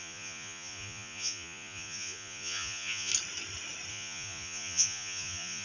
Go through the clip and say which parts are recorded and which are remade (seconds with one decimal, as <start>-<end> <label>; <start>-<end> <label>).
0.0-3.1 remade; 3.1-3.9 recorded; 3.9-5.6 remade